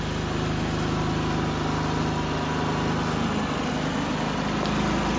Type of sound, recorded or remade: recorded